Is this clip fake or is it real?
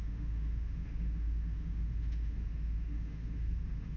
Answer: fake